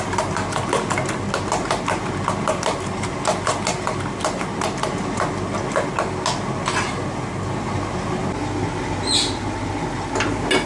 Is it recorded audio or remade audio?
recorded